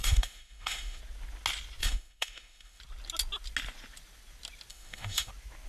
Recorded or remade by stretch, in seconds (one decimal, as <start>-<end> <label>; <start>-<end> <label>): 0.0-1.0 remade; 1.0-1.8 recorded; 1.8-2.8 remade; 2.8-4.7 recorded; 4.7-5.3 remade; 5.3-5.7 recorded